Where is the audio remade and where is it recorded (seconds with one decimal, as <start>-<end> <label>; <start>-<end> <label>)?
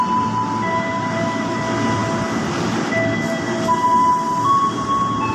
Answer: 0.0-0.9 recorded; 0.9-1.6 remade; 1.6-5.3 recorded